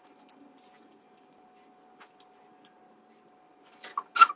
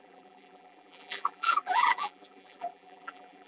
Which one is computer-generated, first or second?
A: second